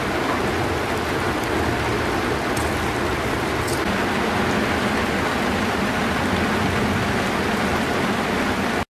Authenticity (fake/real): real